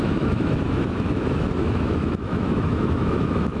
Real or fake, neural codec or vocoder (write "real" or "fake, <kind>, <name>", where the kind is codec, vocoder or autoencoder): fake, autoencoder, DAC-VAE